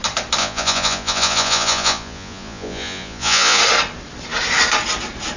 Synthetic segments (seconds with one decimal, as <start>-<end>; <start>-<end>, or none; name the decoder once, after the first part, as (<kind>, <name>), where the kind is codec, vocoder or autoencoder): 0.4-3.6 (vocoder, Vocos)